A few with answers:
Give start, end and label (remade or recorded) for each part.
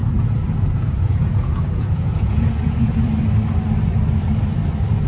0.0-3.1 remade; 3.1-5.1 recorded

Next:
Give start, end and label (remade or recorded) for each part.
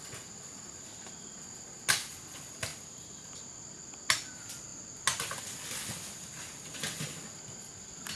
0.0-8.2 recorded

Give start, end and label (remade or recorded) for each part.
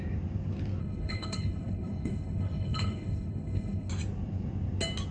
0.0-0.8 recorded; 0.8-3.9 remade; 3.9-5.1 recorded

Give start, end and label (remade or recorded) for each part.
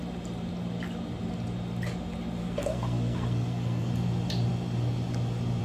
0.0-2.4 recorded; 2.4-3.9 remade; 3.9-5.6 recorded